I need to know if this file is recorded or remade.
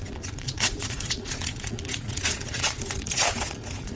remade